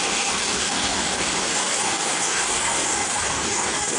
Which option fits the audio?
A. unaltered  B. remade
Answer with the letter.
B